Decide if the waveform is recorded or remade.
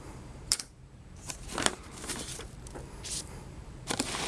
remade